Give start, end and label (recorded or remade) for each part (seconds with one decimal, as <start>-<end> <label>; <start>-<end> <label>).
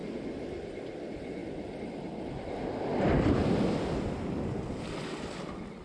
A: 0.0-5.8 recorded